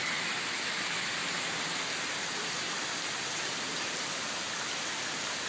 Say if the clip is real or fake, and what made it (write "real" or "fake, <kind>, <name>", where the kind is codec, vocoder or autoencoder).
real